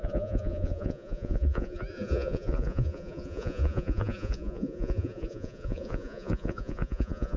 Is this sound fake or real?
fake